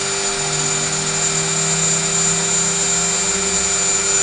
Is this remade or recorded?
recorded